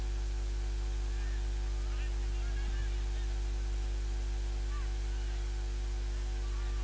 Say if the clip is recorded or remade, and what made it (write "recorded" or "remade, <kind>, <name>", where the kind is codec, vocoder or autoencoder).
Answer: recorded